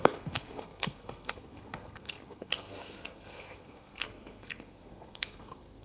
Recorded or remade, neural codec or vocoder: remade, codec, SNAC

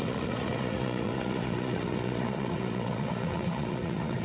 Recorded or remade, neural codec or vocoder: remade, vocoder, Vocos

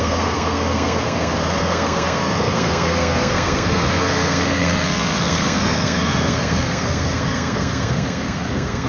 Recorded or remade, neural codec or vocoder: remade, codec, SNAC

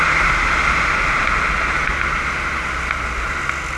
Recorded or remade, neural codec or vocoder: recorded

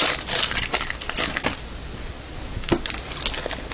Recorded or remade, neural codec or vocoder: recorded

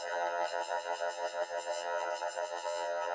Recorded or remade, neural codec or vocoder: remade, vocoder, HiFi-GAN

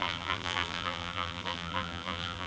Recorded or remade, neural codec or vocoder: remade, vocoder, BigVGAN v2